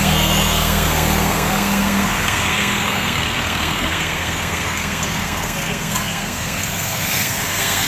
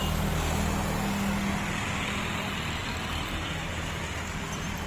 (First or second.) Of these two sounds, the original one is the second